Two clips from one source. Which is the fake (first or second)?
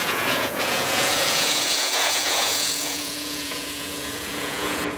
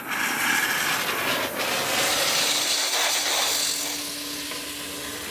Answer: first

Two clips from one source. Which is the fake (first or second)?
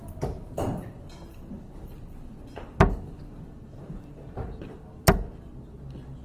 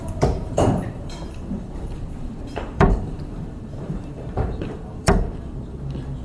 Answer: second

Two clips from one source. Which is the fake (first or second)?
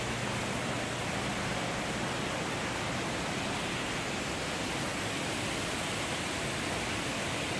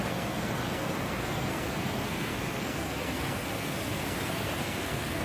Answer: second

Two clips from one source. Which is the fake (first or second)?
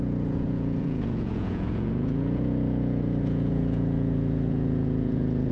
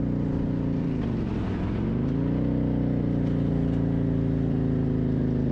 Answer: first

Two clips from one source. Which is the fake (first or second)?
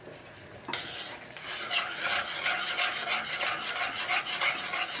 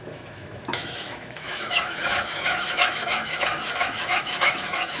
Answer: second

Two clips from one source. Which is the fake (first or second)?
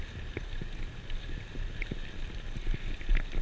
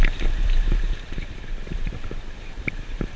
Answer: second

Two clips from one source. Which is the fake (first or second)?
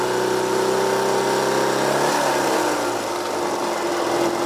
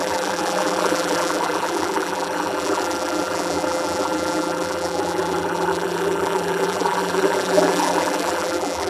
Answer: second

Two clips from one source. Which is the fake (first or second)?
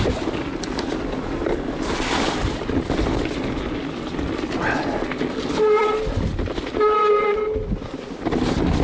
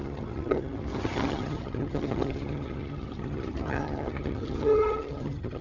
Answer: second